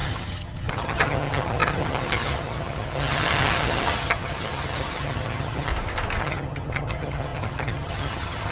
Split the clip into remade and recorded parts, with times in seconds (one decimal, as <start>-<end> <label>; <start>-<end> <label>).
0.0-5.7 remade; 5.7-6.2 recorded; 6.2-8.5 remade